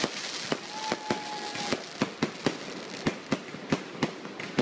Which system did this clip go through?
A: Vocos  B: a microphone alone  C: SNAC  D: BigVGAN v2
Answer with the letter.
B